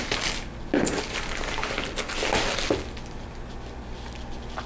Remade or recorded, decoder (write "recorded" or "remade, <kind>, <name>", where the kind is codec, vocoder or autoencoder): recorded